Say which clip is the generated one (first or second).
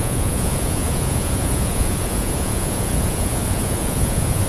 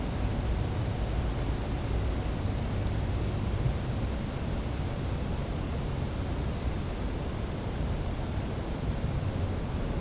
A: first